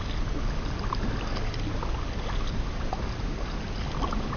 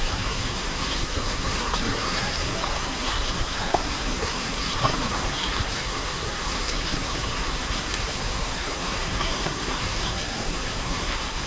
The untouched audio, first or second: first